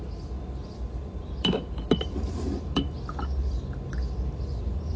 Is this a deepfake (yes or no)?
no